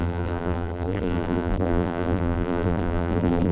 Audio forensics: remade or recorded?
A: remade